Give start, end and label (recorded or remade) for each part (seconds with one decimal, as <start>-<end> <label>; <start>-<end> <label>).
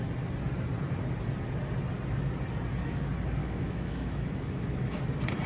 0.0-3.4 recorded; 3.4-5.0 remade; 5.0-5.5 recorded